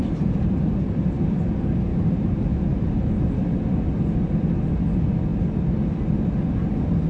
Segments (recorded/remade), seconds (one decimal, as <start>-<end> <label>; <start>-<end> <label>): 0.0-1.2 remade; 1.2-1.9 recorded; 1.9-3.2 remade; 3.2-7.1 recorded